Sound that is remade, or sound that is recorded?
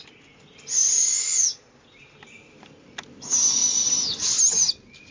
recorded